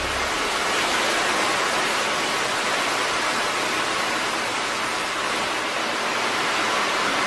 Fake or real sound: real